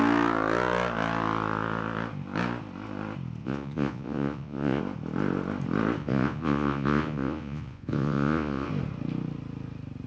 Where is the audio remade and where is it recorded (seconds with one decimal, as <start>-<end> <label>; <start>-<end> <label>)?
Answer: 0.0-3.4 recorded; 3.4-4.8 remade; 4.8-6.0 recorded; 6.0-8.7 remade; 8.7-10.1 recorded